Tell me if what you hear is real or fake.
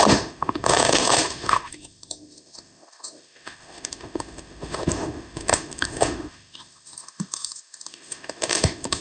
fake